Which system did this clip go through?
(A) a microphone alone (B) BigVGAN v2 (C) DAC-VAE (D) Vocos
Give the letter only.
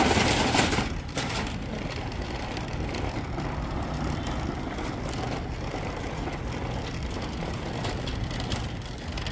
A